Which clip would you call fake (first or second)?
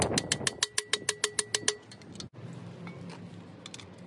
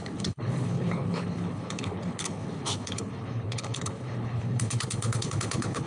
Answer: second